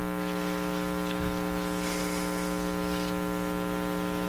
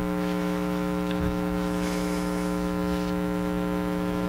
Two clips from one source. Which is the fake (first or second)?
second